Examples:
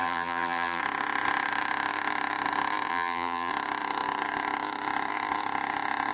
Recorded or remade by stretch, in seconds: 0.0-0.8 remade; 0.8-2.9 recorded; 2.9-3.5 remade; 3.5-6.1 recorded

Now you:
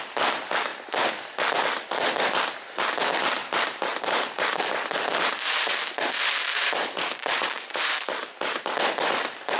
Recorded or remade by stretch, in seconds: 0.0-3.4 recorded; 3.4-8.6 remade; 8.6-9.6 recorded

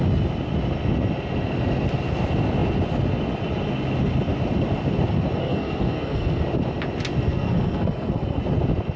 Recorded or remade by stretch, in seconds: 0.0-5.4 recorded; 5.4-6.4 remade; 6.4-7.3 recorded; 7.3-8.4 remade; 8.4-9.0 recorded

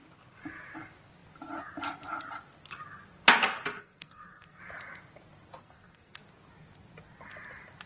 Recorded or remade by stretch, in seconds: 0.0-3.8 recorded; 3.8-4.6 remade; 4.6-5.6 recorded; 5.6-6.2 remade; 6.2-7.9 recorded

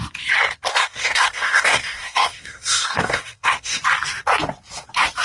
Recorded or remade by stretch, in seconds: 0.0-0.7 recorded; 0.7-3.8 remade; 3.8-5.2 recorded

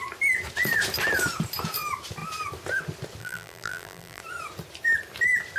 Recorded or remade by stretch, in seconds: 0.0-3.2 recorded; 3.2-4.2 remade; 4.2-5.6 recorded

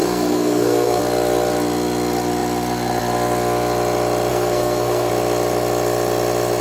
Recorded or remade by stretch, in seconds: 0.0-1.0 remade; 1.0-4.3 recorded; 4.3-5.1 remade; 5.1-6.6 recorded

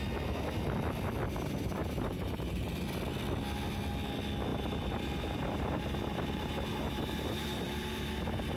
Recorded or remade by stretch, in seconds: 0.0-1.8 recorded; 1.8-2.8 remade; 2.8-4.5 recorded; 4.5-8.1 remade; 8.1-8.6 recorded